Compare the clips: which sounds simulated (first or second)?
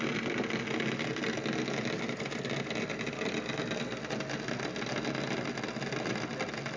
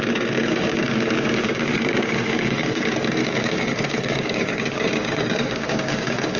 second